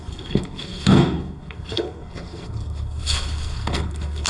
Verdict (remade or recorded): remade